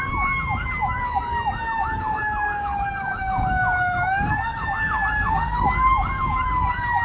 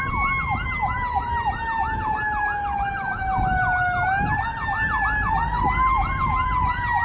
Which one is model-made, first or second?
first